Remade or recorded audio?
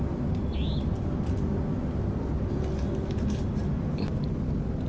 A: recorded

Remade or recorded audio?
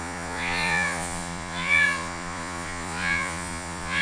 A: remade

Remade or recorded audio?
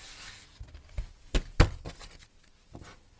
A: recorded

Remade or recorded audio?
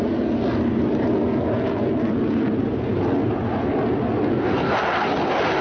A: recorded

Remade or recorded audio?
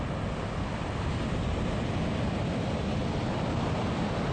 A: recorded